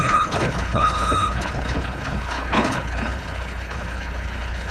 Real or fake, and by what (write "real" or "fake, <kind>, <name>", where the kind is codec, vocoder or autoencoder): fake, codec, HILCodec